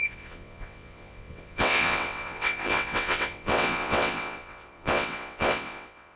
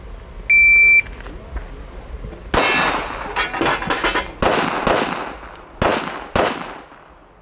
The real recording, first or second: second